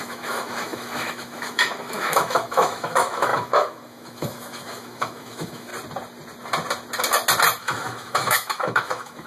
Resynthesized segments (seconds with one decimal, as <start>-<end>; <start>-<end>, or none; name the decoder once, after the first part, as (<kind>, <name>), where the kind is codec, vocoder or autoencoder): 0.0-5.7 (autoencoder, DAC-VAE); 7.6-9.3